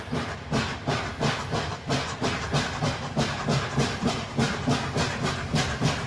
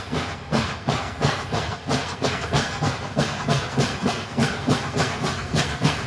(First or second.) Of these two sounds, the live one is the first